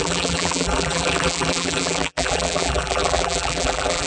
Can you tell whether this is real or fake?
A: fake